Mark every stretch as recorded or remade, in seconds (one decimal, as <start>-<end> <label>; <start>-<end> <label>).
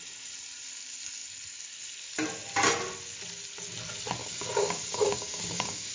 0.0-4.2 recorded; 4.2-5.9 remade